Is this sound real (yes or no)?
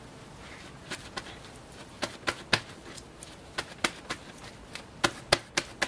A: yes